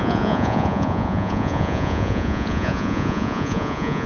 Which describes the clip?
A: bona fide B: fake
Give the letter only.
B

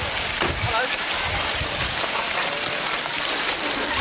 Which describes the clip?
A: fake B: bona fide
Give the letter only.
B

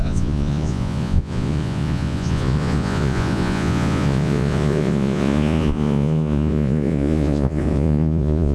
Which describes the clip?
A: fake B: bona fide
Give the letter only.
A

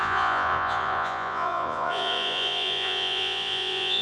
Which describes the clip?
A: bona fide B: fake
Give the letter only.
B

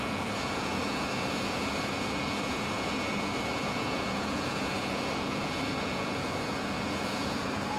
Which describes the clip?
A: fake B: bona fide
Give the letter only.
A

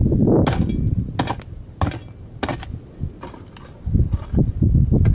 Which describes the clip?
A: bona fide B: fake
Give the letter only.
A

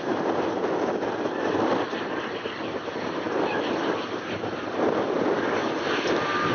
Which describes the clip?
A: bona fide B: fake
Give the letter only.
A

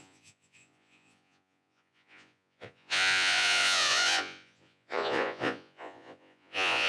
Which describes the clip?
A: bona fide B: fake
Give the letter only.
B